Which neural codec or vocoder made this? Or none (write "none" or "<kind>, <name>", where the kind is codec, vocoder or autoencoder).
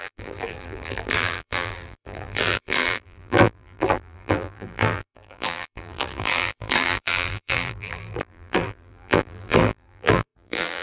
vocoder, BigVGAN v2